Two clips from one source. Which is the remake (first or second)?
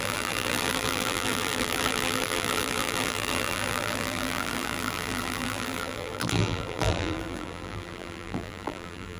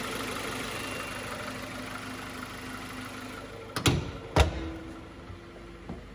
first